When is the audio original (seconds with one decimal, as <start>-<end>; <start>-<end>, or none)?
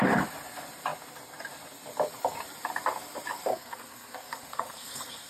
0.0-3.5